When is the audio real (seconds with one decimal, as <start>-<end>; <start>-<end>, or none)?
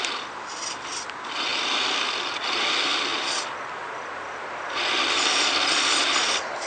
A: 0.0-6.7